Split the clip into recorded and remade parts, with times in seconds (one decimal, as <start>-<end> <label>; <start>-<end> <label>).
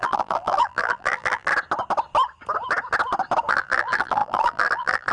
0.0-1.5 remade; 1.5-3.5 recorded; 3.5-5.1 remade